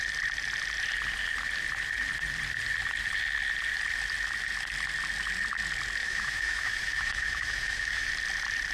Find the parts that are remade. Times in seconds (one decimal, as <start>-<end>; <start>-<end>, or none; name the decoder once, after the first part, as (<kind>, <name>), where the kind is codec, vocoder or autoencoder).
6.0-8.1 (autoencoder, DAC-VAE)

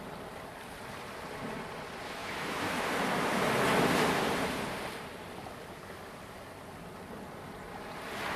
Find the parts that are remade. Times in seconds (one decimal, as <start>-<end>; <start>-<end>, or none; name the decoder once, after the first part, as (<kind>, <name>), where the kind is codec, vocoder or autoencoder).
2.2-2.9 (autoencoder, DAC-VAE)

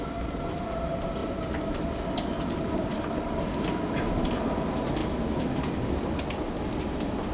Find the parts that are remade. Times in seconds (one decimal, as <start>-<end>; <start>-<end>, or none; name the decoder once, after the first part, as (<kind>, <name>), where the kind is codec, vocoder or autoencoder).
5.0-5.6 (autoencoder, DAC-VAE)